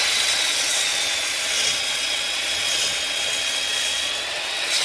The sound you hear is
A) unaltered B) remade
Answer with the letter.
B